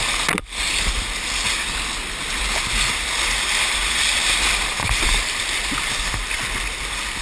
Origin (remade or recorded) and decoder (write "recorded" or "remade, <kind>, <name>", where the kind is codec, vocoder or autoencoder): recorded